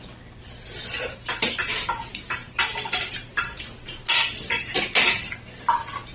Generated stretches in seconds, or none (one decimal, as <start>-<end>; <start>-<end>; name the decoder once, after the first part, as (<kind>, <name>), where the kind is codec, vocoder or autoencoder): none